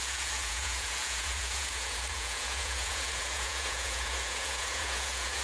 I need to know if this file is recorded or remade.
remade